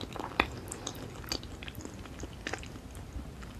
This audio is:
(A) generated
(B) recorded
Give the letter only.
B